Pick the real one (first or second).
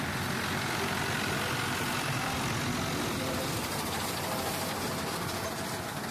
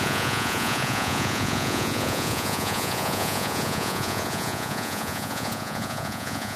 first